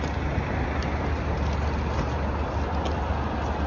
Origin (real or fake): real